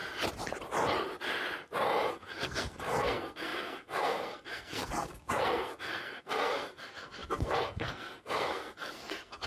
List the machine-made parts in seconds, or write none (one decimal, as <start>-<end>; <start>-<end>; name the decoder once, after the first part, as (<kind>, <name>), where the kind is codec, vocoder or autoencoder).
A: 2.1-9.5 (codec, SNAC)